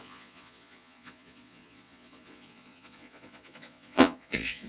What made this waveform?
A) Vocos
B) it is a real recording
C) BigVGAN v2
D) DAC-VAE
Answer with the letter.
A